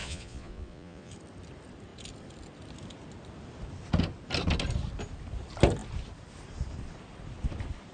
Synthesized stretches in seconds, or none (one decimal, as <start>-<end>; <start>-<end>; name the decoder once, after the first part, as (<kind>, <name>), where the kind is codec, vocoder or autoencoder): 0.0-1.1 (vocoder, Vocos)